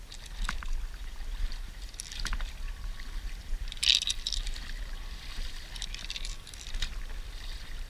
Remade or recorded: remade